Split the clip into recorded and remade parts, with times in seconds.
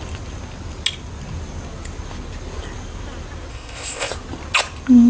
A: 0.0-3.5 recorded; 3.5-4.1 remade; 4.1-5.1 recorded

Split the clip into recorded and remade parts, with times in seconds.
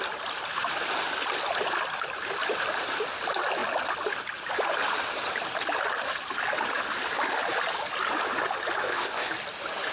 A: 0.0-8.8 recorded; 8.8-9.3 remade; 9.3-9.9 recorded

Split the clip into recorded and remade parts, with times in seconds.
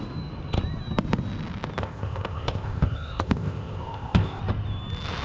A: 0.0-1.8 recorded; 1.8-4.4 remade; 4.4-5.2 recorded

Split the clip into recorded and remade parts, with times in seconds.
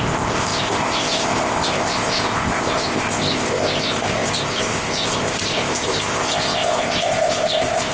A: 0.0-7.9 remade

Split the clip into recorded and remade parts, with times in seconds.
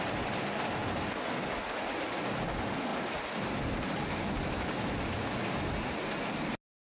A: 0.0-6.9 recorded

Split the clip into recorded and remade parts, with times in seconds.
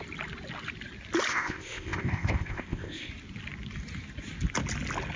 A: 0.0-1.3 recorded; 1.3-3.1 remade; 3.1-5.2 recorded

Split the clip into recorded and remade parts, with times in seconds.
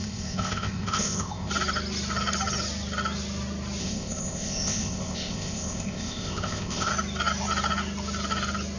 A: 0.0-1.5 remade; 1.5-3.8 recorded; 3.8-6.9 remade; 6.9-8.8 recorded